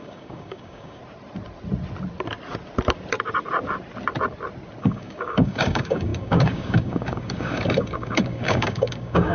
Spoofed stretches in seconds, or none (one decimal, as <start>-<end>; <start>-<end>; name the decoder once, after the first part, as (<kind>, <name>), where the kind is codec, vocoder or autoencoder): 0.0-1.0 (codec, DAC); 4.8-9.3